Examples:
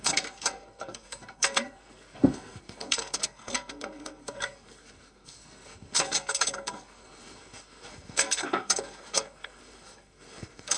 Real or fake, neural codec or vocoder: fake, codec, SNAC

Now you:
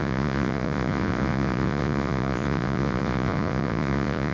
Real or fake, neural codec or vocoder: fake, vocoder, Vocos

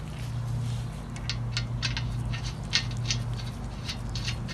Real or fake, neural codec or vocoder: real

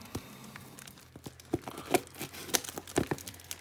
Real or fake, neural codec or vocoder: real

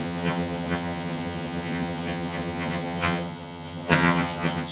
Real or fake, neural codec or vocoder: fake, vocoder, HiFi-GAN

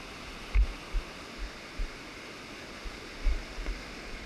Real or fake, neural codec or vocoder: real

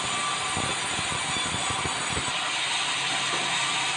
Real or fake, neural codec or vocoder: real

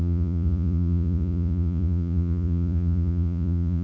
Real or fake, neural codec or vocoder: fake, vocoder, Vocos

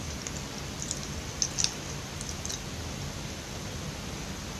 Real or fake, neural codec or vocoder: real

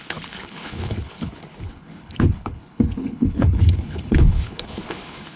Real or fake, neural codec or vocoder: fake, codec, HILCodec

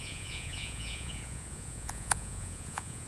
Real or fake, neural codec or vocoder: fake, vocoder, Vocos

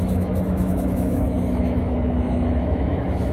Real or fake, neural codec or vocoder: fake, autoencoder, DAC-VAE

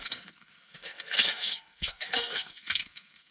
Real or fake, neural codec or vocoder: fake, codec, SNAC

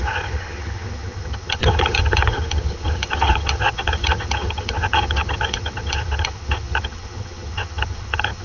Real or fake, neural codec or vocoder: fake, vocoder, HiFi-GAN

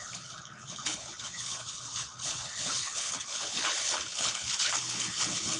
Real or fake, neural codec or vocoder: fake, codec, HILCodec